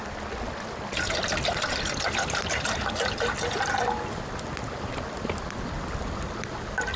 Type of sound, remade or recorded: recorded